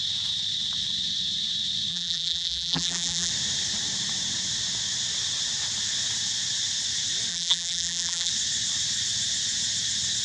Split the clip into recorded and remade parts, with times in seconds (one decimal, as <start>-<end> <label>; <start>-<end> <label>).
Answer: 0.0-1.9 recorded; 1.9-3.3 remade; 3.3-7.3 recorded; 7.3-8.3 remade; 8.3-10.2 recorded

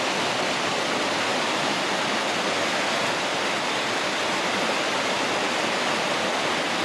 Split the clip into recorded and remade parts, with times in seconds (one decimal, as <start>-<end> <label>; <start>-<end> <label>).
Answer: 0.0-1.3 remade; 1.3-5.0 recorded; 5.0-6.8 remade

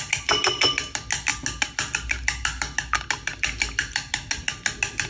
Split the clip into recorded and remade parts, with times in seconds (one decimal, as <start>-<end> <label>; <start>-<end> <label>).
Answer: 0.0-5.1 recorded

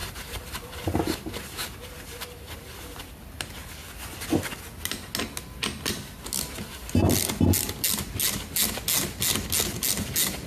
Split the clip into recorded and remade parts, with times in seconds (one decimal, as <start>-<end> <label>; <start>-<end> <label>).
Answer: 0.0-3.0 remade; 3.0-10.5 recorded